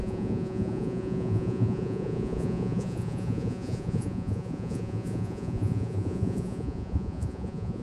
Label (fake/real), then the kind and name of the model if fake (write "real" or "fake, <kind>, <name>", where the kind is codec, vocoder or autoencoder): fake, vocoder, Vocos